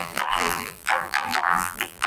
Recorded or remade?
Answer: remade